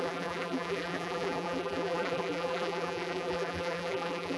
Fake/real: fake